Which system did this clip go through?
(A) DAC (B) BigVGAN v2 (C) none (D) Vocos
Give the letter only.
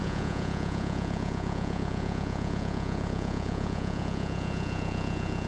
D